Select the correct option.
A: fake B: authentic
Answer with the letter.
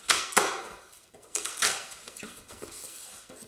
A